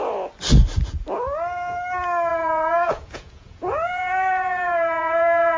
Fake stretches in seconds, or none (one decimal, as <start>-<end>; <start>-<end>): 2.3-5.6